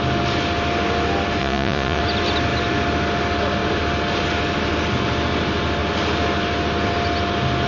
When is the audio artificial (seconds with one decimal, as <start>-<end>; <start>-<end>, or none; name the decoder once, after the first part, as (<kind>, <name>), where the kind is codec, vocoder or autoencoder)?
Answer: 1.4-2.0 (vocoder, Vocos)